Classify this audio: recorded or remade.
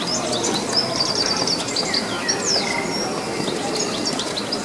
recorded